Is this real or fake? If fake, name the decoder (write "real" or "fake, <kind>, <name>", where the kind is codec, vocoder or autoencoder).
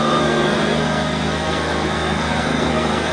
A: fake, codec, SNAC